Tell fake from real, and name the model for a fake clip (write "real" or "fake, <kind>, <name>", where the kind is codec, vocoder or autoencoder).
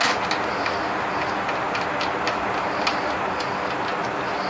real